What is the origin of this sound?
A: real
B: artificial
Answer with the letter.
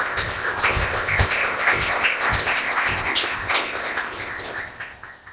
B